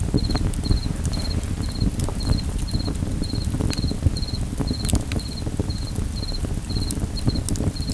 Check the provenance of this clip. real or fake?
real